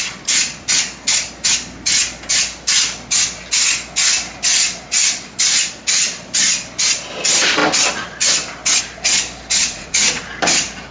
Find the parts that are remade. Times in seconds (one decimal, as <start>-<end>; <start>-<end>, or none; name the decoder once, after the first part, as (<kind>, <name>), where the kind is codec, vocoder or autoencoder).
9.6-10.2 (vocoder, Vocos)

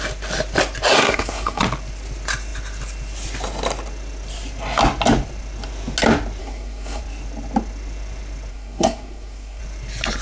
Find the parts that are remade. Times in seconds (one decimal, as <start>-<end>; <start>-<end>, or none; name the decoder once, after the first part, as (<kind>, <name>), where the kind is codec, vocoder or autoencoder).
0.9-1.6 (codec, SNAC); 6.4-7.0; 8.5-9.6

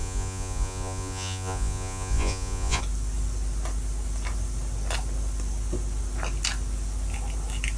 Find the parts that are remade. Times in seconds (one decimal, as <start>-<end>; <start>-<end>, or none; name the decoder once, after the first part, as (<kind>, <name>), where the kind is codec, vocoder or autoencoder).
0.0-2.8 (vocoder, Vocos)

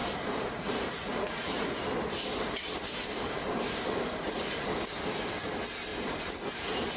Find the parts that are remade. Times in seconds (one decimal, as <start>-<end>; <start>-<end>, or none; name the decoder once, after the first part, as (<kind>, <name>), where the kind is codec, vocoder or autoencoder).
0.0-1.6 (vocoder, BigVGAN v2); 2.3-5.0; 5.9-7.0